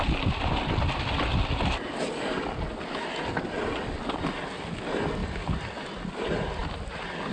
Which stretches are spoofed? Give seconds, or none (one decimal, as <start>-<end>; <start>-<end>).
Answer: none

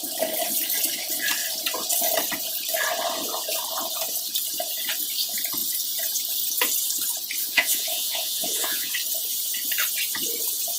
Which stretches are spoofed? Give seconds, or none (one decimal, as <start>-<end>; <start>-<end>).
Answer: 7.4-8.9

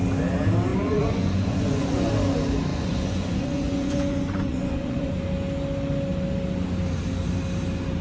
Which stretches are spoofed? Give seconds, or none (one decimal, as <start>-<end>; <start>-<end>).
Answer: 0.7-2.1; 2.7-5.3

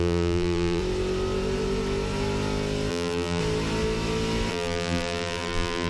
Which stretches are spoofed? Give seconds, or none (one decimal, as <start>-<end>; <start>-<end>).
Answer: 0.0-0.8; 2.9-3.4; 4.5-5.9

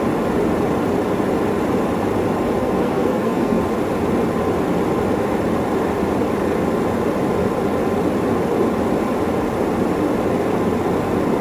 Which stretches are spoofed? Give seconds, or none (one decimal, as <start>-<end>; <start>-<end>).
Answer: 2.6-3.6

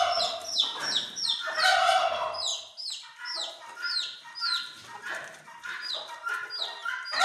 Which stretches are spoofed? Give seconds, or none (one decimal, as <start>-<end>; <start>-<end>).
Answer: none

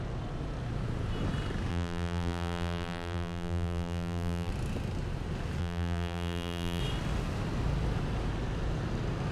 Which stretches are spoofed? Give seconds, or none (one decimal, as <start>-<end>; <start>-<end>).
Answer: 1.7-4.5; 5.6-6.8

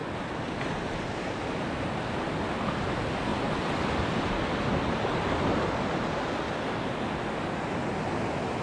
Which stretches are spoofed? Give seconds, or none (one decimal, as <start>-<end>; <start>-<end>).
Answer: none